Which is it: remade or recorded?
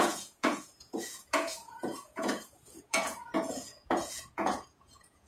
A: remade